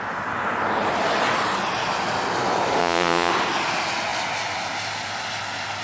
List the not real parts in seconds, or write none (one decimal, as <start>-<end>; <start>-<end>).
2.8-3.3